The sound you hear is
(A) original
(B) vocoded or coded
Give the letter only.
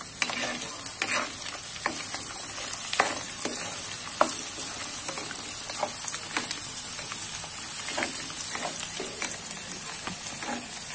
A